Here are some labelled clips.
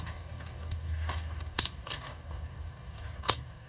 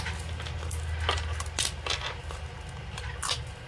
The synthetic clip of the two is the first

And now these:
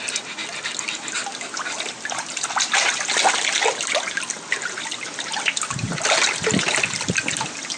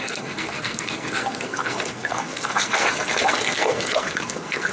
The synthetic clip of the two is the second